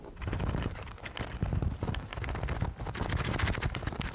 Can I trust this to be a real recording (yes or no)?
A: yes